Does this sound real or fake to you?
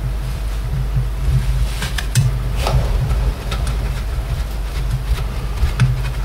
fake